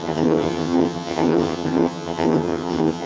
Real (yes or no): no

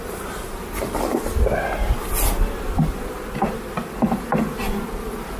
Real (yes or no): yes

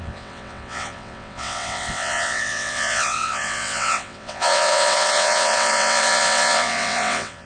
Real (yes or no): no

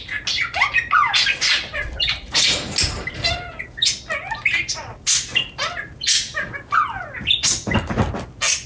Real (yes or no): yes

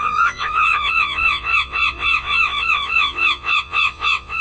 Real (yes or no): no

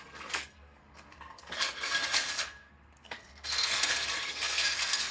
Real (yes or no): no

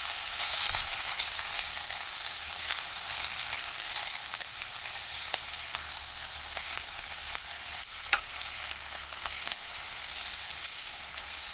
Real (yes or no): no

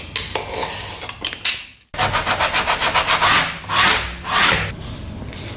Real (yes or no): yes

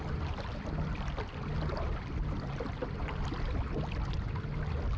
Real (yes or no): yes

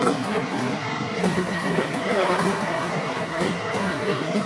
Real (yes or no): no